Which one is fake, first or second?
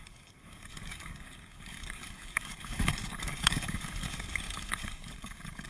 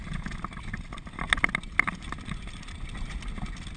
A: first